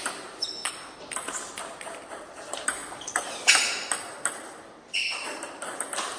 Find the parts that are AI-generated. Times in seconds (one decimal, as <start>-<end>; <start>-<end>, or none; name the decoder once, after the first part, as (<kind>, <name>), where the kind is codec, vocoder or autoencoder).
0.0-0.6 (vocoder, BigVGAN v2); 2.3-2.8